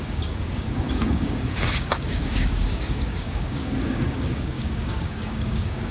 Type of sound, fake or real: fake